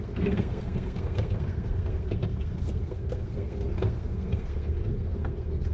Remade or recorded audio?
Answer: remade